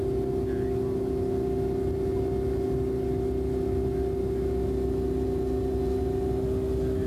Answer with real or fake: real